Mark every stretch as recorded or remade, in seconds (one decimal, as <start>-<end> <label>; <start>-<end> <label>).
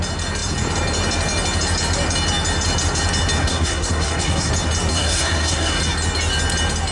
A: 0.0-3.4 recorded; 3.4-4.5 remade; 4.5-4.9 recorded; 4.9-5.8 remade; 5.8-6.9 recorded